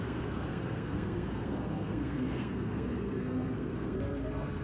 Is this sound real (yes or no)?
no